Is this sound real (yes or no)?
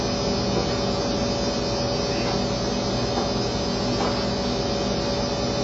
yes